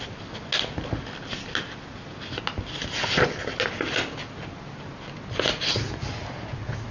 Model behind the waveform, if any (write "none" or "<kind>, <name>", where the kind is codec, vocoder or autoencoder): none